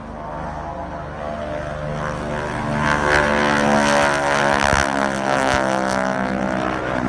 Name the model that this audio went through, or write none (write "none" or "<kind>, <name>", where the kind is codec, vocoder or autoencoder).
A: none